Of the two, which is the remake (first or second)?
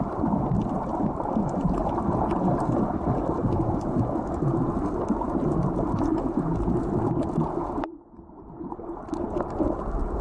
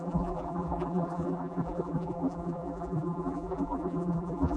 second